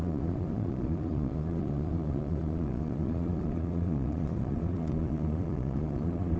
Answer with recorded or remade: remade